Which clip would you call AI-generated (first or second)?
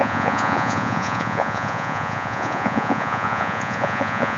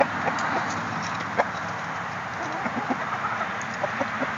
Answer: first